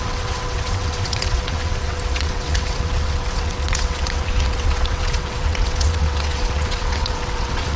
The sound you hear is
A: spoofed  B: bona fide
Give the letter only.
A